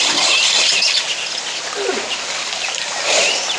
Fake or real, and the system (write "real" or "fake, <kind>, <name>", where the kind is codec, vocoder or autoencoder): real